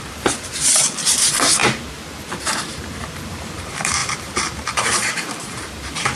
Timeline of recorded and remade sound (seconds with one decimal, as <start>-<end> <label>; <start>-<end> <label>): 0.0-6.2 remade